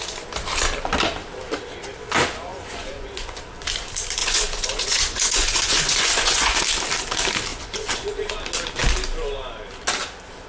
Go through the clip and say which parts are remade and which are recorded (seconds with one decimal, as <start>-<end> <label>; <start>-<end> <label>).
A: 0.0-2.5 recorded; 2.5-3.4 remade; 3.4-4.2 recorded; 4.2-6.6 remade; 6.6-7.5 recorded; 7.5-8.3 remade; 8.3-10.5 recorded